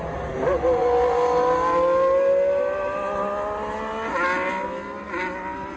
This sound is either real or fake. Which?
real